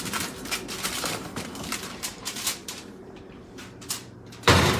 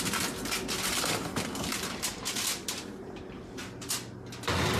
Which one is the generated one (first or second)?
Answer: first